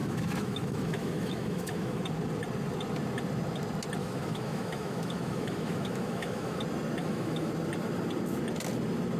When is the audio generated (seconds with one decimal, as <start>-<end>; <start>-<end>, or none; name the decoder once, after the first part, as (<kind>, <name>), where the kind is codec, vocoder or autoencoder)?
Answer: 0.0-2.0 (autoencoder, DAC-VAE); 4.0-6.6; 7.0-7.5